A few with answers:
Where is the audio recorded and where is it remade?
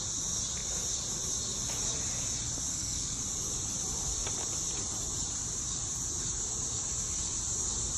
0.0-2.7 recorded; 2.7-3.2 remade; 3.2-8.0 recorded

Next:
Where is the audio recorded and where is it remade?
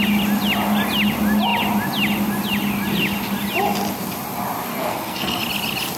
0.0-4.7 recorded; 4.7-5.4 remade; 5.4-6.0 recorded